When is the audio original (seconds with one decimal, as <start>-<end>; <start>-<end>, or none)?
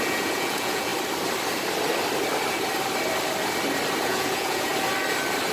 0.9-4.0; 4.7-5.5